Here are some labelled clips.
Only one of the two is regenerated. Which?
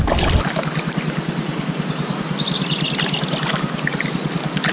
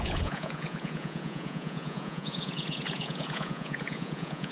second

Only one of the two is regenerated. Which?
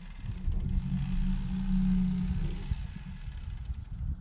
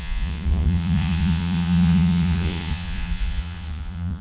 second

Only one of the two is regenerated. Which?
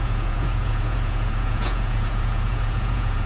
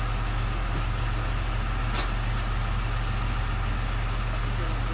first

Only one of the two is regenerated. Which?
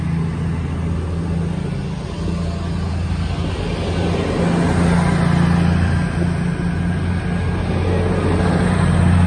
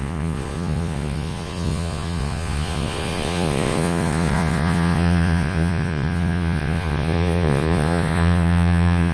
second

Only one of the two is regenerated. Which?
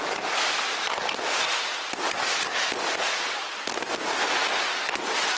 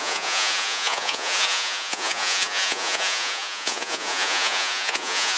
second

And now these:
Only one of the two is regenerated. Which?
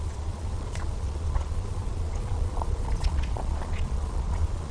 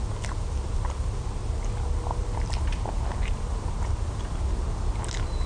first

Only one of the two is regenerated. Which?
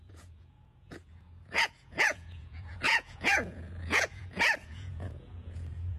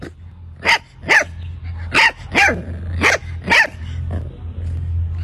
first